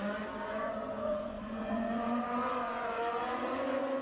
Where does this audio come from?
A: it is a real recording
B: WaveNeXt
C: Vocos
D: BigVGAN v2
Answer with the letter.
C